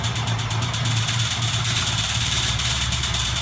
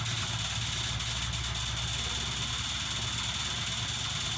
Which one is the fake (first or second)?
first